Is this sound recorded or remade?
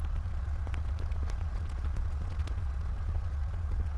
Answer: remade